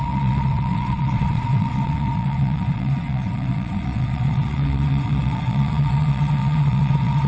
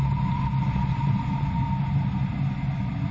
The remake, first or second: first